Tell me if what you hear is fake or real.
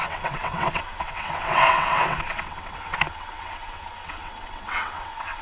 fake